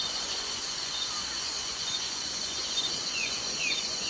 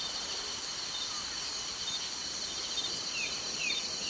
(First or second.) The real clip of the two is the second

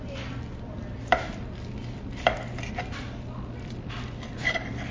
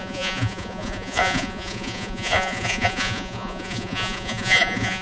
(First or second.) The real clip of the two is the first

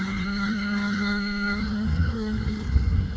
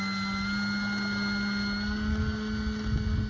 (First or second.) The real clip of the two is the second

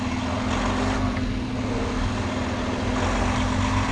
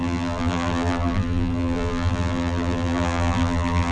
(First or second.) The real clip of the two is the first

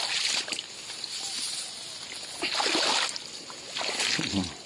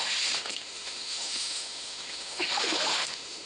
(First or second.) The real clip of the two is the first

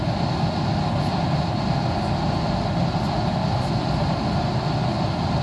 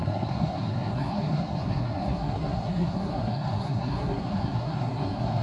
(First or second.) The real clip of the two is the first